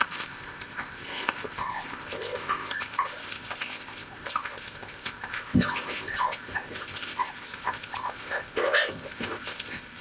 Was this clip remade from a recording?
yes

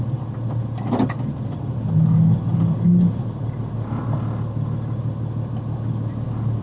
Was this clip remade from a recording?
no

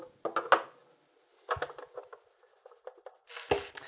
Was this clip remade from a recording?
no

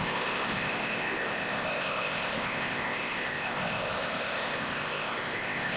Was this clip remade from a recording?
yes